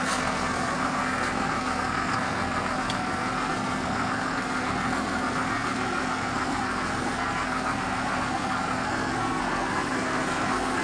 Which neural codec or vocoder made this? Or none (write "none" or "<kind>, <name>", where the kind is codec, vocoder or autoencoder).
codec, SNAC